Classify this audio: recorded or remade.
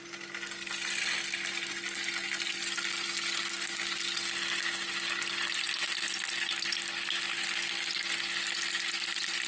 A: recorded